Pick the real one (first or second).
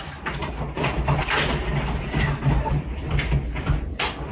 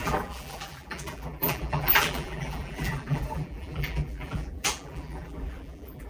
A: first